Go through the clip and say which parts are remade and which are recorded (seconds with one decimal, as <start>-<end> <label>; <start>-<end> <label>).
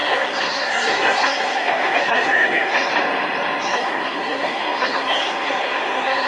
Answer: 0.0-2.9 remade; 2.9-3.6 recorded; 3.6-6.3 remade